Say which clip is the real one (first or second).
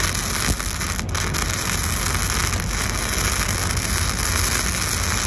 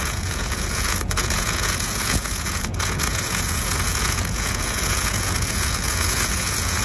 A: first